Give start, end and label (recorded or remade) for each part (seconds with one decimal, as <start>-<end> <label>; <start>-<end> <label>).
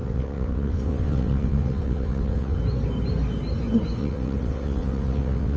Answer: 0.0-2.6 remade; 2.6-4.0 recorded; 4.0-5.6 remade